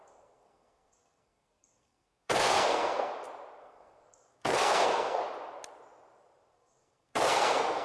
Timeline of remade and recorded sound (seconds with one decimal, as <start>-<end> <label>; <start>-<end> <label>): 0.0-3.1 remade; 3.1-3.6 recorded; 3.6-5.2 remade; 5.2-6.5 recorded; 6.5-7.8 remade